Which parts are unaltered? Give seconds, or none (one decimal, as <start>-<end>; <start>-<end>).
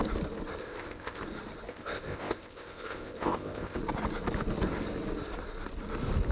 0.0-0.6; 1.2-1.7; 3.8-6.3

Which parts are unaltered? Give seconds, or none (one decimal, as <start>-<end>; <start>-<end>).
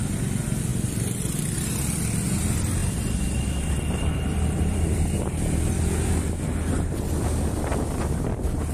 0.0-0.7; 2.0-2.8; 7.5-8.7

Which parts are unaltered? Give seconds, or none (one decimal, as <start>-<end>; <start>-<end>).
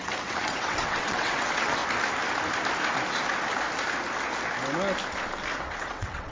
1.8-5.6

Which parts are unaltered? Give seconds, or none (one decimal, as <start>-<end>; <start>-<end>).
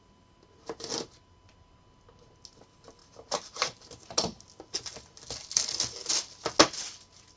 0.0-7.4